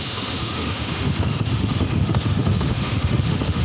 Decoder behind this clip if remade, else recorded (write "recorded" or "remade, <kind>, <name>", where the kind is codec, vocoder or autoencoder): remade, autoencoder, DAC-VAE